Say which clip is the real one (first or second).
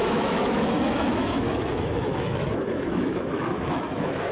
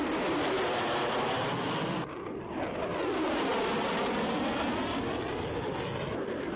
second